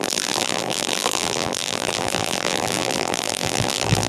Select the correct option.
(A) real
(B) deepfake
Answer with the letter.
B